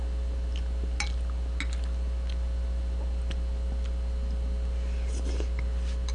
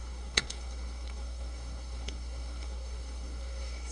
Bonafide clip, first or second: first